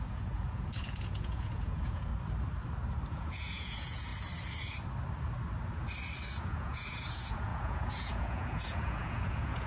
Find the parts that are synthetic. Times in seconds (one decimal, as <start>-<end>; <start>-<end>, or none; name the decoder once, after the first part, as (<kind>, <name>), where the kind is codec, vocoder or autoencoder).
0.0-2.1 (vocoder, Vocos); 3.1-4.1; 6.4-9.7